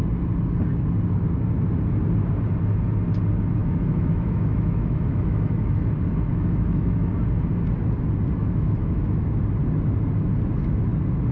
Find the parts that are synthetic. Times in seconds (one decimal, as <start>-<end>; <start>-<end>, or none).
3.6-5.8; 6.3-7.1; 8.4-9.4